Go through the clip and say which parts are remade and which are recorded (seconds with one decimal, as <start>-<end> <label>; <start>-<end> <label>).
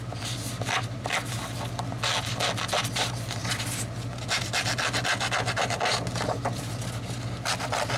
0.0-8.0 recorded